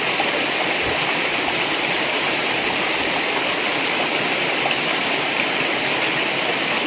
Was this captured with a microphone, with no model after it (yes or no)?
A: yes